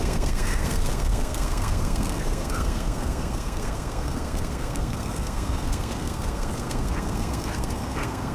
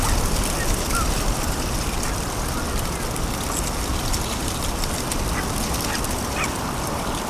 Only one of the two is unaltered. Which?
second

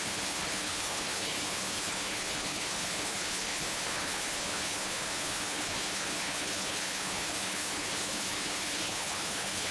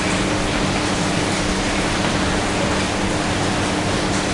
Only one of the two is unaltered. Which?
second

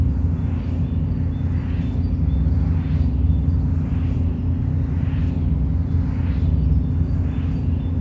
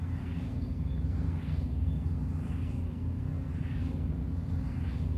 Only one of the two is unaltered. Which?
first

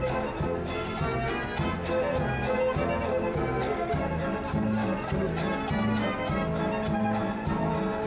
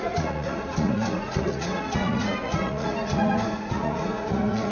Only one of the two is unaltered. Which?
first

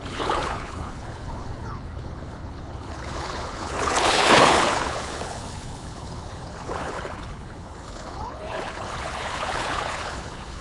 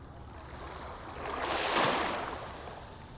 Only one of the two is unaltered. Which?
second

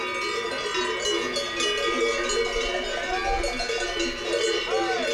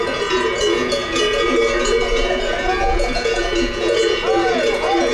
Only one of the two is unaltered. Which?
first